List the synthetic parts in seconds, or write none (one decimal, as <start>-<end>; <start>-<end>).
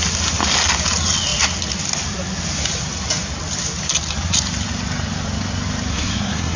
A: 5.9-6.6